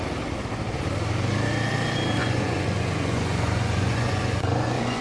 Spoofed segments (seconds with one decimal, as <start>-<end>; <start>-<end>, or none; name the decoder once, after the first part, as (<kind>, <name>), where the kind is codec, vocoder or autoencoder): 2.2-5.0 (vocoder, Vocos)